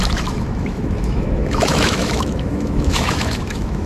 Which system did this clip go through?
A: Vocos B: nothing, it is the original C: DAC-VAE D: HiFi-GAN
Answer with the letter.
C